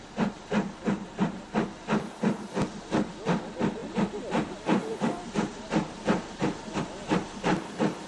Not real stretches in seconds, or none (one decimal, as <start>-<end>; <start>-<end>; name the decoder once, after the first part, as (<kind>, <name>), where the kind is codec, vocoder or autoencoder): none